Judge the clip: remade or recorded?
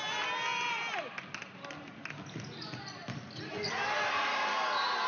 recorded